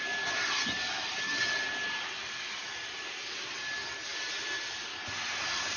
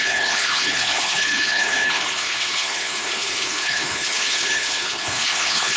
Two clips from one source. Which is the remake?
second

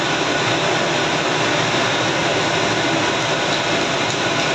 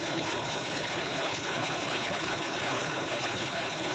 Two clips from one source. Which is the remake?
second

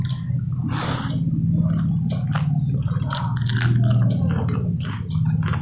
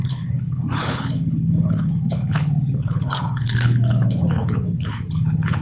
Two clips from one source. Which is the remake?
second